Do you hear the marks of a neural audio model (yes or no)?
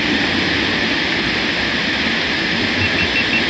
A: no